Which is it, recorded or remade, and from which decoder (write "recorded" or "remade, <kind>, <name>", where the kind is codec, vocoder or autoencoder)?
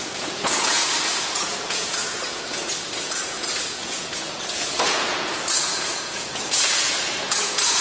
remade, vocoder, Vocos